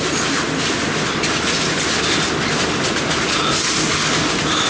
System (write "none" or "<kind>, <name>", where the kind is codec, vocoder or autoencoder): none